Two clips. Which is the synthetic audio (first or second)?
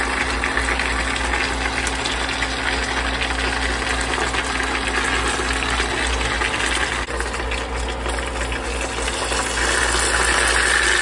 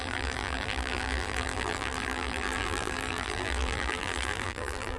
second